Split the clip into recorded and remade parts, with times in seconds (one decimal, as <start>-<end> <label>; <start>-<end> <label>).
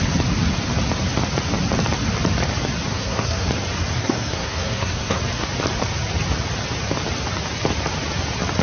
0.0-2.9 recorded; 2.9-3.5 remade; 3.5-4.0 recorded; 4.0-5.2 remade; 5.2-8.6 recorded